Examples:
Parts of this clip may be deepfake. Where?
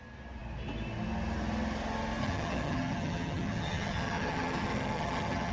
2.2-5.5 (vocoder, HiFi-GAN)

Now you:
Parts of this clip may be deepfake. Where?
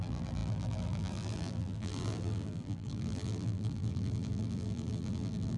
0.0-5.6 (vocoder, BigVGAN v2)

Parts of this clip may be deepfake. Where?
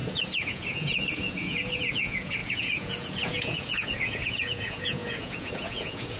0.0-6.2 (vocoder, Vocos)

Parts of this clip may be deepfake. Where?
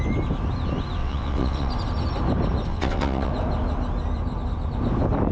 1.0-1.7 (vocoder, WaveNeXt); 2.7-3.3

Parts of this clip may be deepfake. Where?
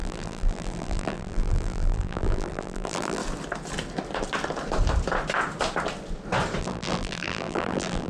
0.0-3.2 (vocoder, BigVGAN v2); 6.6-8.1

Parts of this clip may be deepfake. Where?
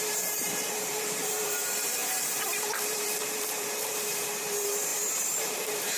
0.0-6.0 (vocoder, BigVGAN v2)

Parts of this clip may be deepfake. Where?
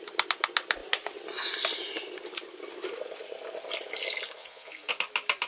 4.4-4.9 (vocoder, Vocos)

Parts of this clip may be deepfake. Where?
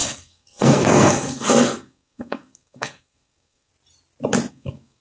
0.0-3.7 (codec, SNAC); 4.5-5.0